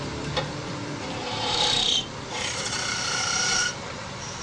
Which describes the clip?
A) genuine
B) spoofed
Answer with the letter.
B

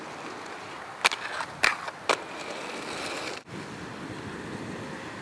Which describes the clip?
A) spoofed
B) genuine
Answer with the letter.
B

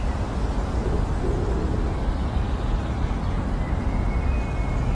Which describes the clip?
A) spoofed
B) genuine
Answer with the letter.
B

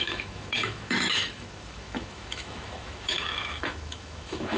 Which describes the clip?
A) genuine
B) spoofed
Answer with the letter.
B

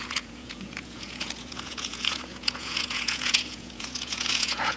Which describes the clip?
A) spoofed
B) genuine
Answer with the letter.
A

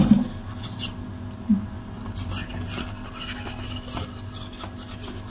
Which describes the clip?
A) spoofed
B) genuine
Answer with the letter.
B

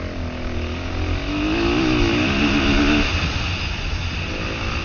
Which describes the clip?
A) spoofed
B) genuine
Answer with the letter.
B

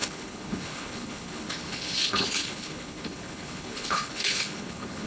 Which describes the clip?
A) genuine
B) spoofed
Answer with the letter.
B